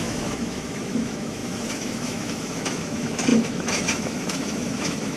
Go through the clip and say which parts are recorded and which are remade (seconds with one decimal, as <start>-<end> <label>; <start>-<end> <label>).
0.0-5.2 remade